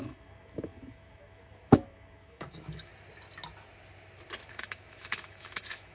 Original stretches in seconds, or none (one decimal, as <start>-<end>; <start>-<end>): 2.9-4.5